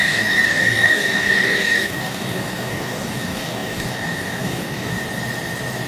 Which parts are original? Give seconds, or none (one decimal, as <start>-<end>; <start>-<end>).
5.0-5.9